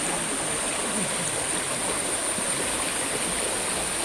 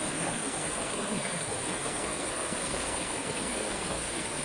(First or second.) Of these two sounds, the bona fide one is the first